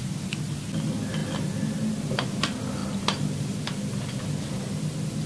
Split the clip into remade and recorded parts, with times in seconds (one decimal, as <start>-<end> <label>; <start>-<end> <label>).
0.0-5.3 recorded